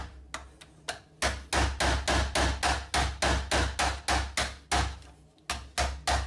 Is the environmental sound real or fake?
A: real